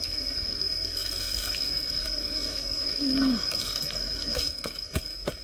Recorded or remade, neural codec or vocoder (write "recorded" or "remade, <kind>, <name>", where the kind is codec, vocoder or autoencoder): remade, codec, SNAC